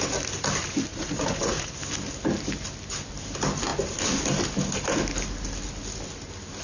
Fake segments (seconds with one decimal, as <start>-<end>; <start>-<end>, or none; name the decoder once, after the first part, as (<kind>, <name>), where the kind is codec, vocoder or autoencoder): 0.9-1.7 (vocoder, Vocos)